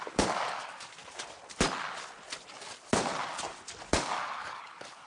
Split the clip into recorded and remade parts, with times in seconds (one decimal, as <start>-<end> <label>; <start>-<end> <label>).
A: 0.0-1.0 remade; 1.0-2.5 recorded; 2.5-3.1 remade; 3.1-3.8 recorded; 3.8-5.1 remade